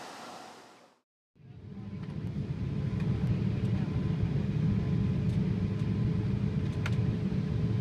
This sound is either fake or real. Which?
real